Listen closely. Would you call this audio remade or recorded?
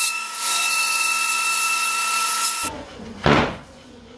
remade